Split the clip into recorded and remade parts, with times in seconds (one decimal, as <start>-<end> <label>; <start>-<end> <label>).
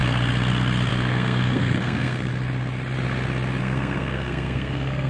0.0-0.9 recorded; 0.9-2.3 remade; 2.3-3.6 recorded; 3.6-5.1 remade